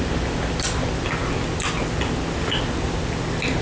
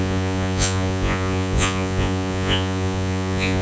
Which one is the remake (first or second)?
second